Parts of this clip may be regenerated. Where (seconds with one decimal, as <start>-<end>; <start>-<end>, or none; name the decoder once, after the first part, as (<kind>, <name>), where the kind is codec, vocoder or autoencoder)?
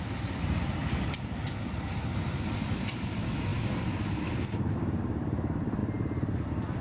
none